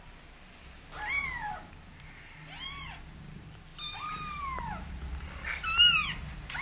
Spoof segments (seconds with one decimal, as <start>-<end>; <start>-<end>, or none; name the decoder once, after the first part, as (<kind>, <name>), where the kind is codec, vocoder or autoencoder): none